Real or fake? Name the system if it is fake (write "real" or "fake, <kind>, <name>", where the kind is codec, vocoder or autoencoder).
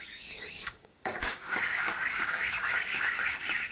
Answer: fake, codec, DAC